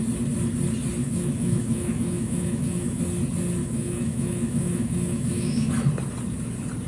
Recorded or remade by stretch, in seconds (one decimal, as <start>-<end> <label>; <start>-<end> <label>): 0.0-1.0 recorded; 1.0-3.0 remade; 3.0-3.6 recorded; 3.6-5.7 remade; 5.7-6.9 recorded